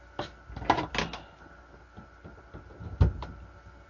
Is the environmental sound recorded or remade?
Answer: recorded